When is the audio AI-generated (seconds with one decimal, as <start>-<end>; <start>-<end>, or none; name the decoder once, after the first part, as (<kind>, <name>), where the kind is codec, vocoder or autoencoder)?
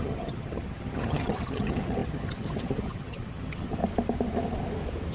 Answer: 0.0-3.8 (vocoder, HiFi-GAN)